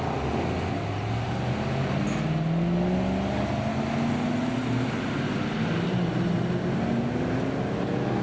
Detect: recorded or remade recorded